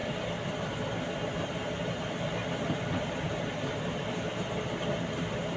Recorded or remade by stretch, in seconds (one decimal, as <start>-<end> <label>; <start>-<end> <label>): 0.0-5.6 recorded